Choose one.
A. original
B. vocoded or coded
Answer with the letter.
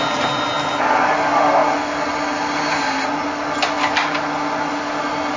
A